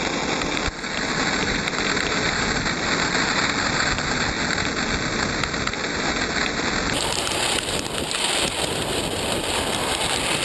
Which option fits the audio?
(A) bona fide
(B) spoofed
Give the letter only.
A